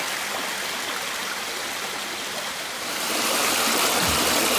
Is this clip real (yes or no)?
yes